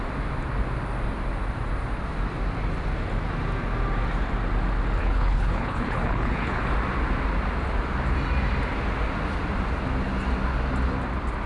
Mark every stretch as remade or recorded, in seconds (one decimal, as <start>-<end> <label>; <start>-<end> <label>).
0.0-5.0 recorded; 5.0-6.6 remade; 6.6-11.5 recorded